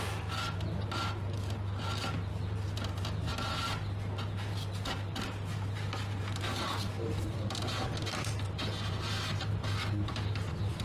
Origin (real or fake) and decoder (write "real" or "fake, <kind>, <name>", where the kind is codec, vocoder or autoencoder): real